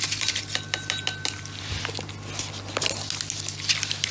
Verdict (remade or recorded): recorded